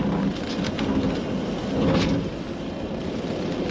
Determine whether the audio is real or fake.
real